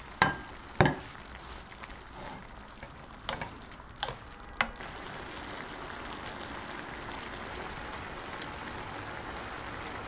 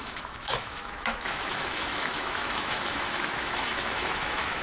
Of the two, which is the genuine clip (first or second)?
first